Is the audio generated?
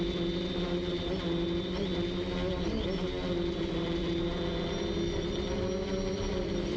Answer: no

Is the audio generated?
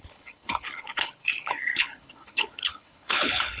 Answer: yes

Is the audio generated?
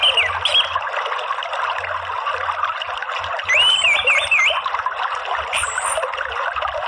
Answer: no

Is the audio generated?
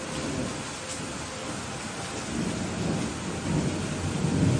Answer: no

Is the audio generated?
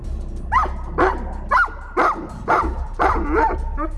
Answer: no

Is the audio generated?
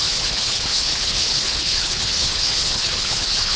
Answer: yes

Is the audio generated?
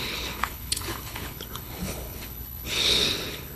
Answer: yes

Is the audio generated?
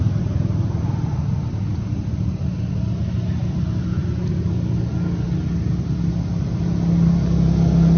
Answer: no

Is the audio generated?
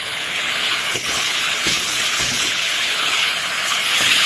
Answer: yes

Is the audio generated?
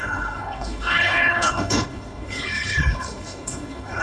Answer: yes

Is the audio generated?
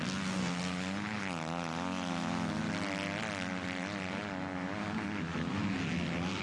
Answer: no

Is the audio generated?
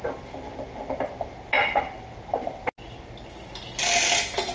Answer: no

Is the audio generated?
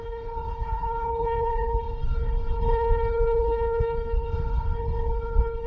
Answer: yes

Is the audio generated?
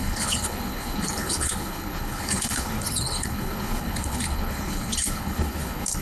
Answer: yes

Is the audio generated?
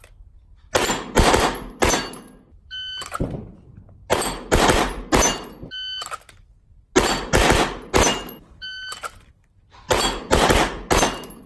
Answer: no